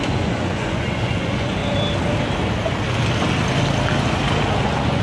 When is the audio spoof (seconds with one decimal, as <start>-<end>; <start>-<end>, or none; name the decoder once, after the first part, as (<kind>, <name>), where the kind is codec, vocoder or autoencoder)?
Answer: 0.0-1.6 (vocoder, Vocos); 4.6-5.0